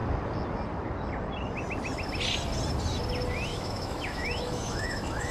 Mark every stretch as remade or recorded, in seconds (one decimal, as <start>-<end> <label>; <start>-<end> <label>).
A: 0.0-3.5 recorded; 3.5-5.3 remade